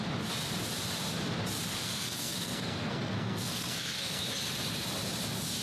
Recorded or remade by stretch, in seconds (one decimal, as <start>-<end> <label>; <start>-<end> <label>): 0.0-1.7 recorded; 1.7-4.2 remade; 4.2-5.6 recorded